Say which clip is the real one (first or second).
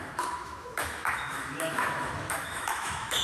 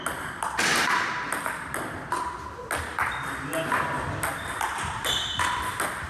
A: second